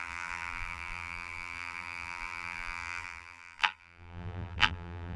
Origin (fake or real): fake